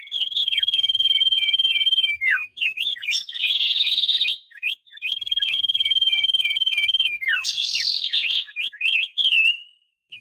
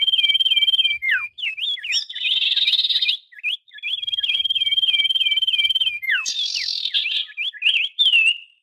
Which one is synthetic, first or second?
first